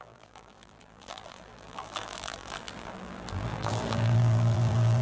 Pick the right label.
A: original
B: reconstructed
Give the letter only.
B